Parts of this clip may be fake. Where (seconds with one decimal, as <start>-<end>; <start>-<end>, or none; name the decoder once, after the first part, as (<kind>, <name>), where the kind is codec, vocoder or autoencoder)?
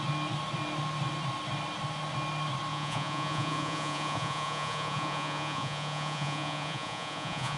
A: 2.7-7.6 (vocoder, Vocos)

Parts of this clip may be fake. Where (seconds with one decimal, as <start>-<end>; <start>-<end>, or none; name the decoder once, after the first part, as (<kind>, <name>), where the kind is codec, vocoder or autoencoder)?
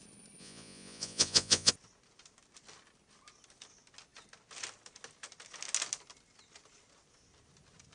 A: 0.4-1.7 (vocoder, Vocos)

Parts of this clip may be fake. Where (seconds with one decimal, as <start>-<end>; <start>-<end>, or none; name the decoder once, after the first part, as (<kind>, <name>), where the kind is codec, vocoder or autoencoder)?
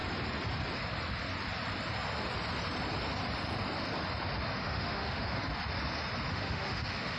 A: 4.6-5.4 (autoencoder, DAC-VAE); 6.3-7.2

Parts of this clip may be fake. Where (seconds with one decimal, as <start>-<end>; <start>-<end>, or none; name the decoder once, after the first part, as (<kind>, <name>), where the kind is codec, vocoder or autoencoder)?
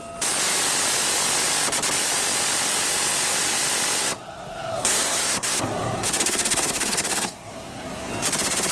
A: 4.0-8.1 (codec, SNAC)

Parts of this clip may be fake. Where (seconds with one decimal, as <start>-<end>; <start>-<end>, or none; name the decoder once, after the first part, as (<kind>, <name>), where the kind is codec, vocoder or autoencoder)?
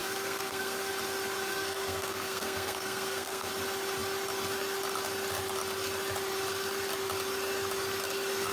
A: 0.0-0.9 (codec, SNAC); 1.5-3.5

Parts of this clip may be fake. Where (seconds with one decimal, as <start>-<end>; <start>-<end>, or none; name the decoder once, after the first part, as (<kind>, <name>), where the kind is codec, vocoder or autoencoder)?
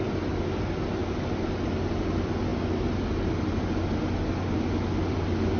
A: none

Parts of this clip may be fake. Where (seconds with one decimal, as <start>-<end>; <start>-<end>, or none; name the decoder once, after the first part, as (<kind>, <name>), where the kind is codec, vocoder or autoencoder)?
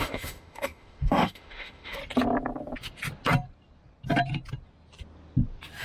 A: 0.0-2.0 (autoencoder, DAC-VAE)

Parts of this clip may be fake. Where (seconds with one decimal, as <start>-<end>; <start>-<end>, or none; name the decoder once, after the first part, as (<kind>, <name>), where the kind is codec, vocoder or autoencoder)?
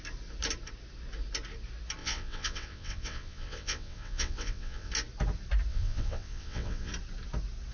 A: 2.0-4.9 (vocoder, WaveNeXt); 5.7-6.9